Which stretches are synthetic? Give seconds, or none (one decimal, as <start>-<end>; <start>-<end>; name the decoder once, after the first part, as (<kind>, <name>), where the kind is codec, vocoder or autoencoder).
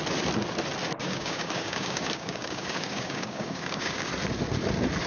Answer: 1.0-4.1 (codec, DAC)